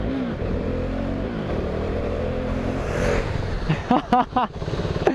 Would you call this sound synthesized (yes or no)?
yes